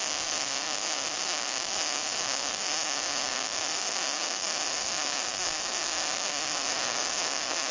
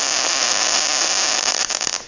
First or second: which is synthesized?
first